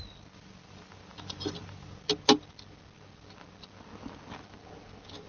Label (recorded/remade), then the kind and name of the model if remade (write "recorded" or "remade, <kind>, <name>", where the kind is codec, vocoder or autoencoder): recorded